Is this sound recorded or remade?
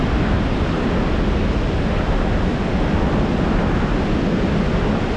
recorded